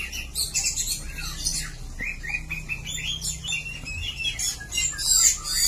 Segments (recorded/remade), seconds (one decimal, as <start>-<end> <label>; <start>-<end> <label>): 0.0-5.7 recorded